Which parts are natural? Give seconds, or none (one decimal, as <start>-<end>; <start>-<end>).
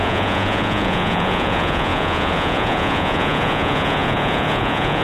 none